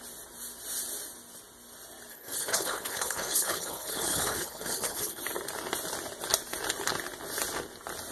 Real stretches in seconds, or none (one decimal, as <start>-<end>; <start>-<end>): 0.0-2.1; 5.2-8.1